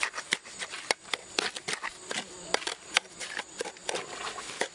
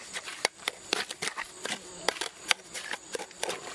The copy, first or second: second